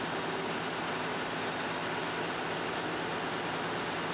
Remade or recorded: recorded